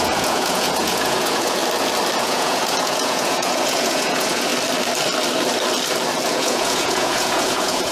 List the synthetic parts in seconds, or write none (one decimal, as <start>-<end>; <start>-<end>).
0.0-1.6; 2.2-4.5; 6.3-7.9